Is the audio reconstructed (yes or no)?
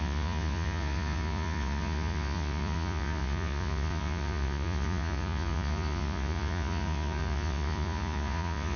yes